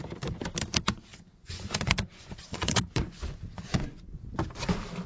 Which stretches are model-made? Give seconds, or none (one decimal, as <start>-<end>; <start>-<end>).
1.1-4.2